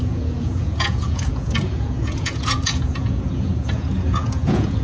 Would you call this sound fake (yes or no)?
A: yes